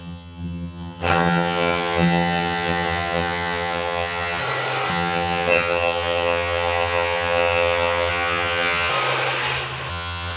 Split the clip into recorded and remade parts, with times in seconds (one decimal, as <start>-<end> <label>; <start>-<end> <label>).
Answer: 0.0-4.4 remade; 4.4-4.9 recorded; 4.9-8.9 remade; 8.9-9.9 recorded; 9.9-10.4 remade